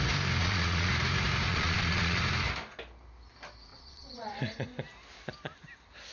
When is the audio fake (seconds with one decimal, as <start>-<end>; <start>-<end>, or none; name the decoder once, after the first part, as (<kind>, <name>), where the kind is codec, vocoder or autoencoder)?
0.4-0.9 (vocoder, Vocos); 1.5-2.2; 3.7-4.4